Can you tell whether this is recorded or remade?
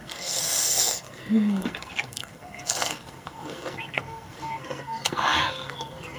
remade